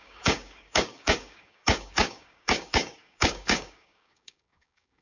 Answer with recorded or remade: remade